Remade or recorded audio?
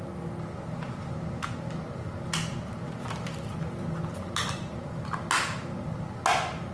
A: recorded